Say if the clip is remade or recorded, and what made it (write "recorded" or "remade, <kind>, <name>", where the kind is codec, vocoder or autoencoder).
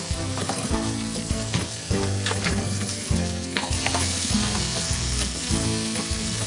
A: remade, codec, SNAC